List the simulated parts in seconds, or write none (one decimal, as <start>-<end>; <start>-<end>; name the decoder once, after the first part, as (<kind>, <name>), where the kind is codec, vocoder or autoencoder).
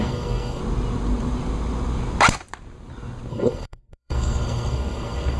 0.0-0.6 (codec, SNAC); 3.3-5.4